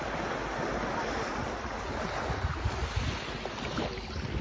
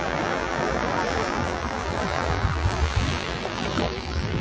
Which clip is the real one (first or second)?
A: first